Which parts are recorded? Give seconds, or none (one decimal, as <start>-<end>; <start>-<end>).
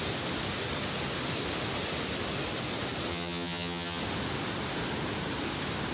0.0-3.1; 4.0-5.9